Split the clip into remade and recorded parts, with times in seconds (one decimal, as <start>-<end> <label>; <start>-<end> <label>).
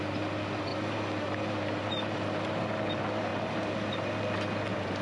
0.0-5.0 recorded